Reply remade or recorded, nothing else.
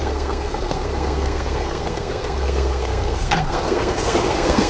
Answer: remade